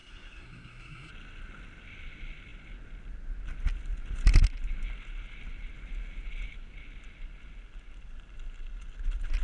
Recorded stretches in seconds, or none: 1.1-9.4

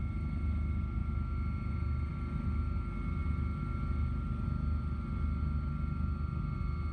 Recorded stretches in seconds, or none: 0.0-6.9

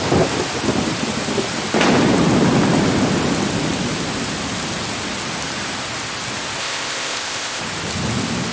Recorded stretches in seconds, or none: 0.0-6.6; 7.6-8.5

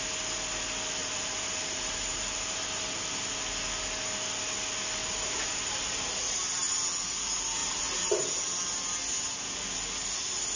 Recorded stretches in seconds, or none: 0.0-1.0; 2.6-5.0; 6.4-7.6; 8.2-10.6